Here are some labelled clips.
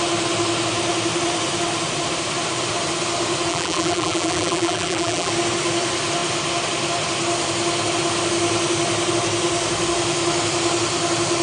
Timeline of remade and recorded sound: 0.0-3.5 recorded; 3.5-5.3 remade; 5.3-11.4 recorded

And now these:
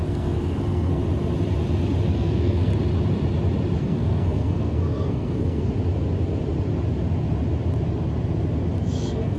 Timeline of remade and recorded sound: 0.0-1.0 remade; 1.0-2.1 recorded; 2.1-2.7 remade; 2.7-3.8 recorded; 3.8-5.7 remade; 5.7-8.8 recorded; 8.8-9.4 remade